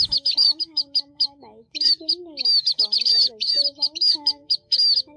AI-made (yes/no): yes